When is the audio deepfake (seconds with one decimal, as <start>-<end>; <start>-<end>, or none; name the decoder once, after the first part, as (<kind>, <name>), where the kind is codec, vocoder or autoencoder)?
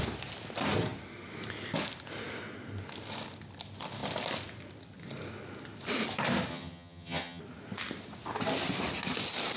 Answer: 6.5-7.4 (vocoder, HiFi-GAN)